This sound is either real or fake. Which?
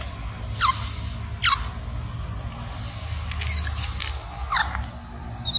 real